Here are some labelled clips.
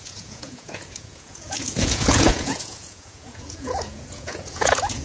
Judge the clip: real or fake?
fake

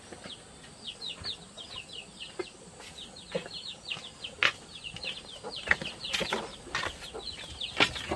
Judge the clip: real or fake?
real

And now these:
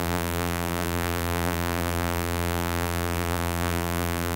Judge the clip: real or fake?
fake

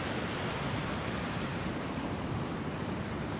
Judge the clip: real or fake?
real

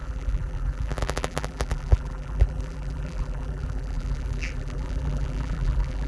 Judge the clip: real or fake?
fake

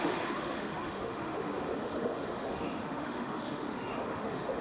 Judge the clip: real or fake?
fake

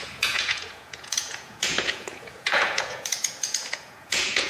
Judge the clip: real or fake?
fake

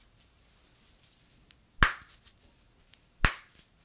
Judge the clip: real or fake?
real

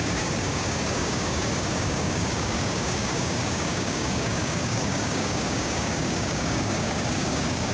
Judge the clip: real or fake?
fake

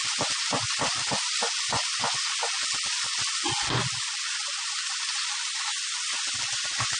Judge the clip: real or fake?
real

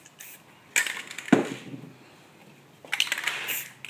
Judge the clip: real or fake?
real